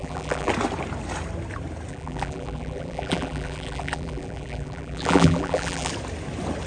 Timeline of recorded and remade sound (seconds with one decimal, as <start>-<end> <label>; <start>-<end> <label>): 0.0-0.5 remade; 0.5-1.9 recorded; 1.9-5.9 remade; 5.9-6.7 recorded